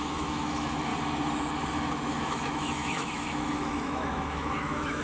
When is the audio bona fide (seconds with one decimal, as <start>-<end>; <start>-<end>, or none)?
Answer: 0.9-1.7